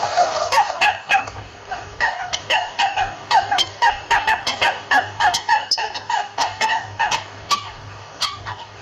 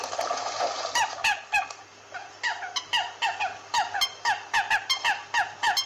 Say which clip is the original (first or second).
second